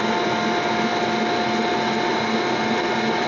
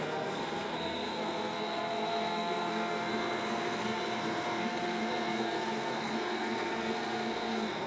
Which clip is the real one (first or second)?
first